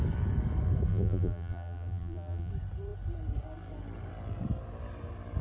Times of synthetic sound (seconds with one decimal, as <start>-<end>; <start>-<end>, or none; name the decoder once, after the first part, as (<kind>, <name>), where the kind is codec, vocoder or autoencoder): 0.9-2.5 (vocoder, BigVGAN v2)